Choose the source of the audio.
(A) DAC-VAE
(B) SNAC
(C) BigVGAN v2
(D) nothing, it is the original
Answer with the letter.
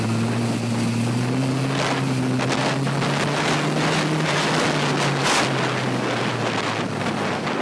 D